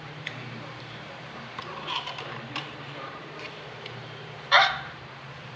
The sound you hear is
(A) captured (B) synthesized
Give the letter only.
B